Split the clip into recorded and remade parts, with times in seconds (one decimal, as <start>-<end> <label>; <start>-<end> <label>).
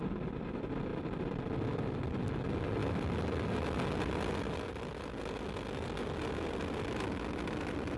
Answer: 0.0-8.0 recorded